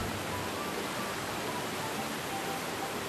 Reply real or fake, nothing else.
real